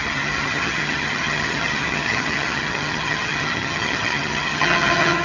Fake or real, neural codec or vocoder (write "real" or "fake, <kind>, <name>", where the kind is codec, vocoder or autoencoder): fake, vocoder, HiFi-GAN